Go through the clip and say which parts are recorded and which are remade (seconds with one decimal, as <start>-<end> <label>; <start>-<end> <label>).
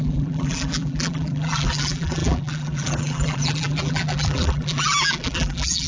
0.0-5.9 remade